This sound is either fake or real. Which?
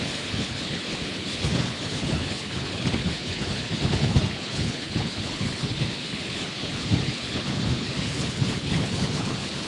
fake